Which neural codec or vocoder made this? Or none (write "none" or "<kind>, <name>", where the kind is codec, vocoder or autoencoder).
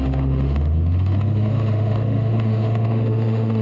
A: autoencoder, DAC-VAE